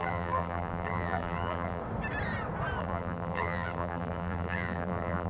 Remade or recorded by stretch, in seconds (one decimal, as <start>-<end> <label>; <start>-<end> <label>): 0.0-1.8 remade; 1.8-2.8 recorded; 2.8-5.3 remade